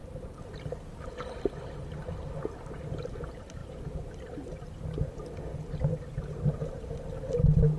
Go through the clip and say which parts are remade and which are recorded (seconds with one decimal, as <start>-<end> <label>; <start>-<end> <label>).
0.0-7.8 recorded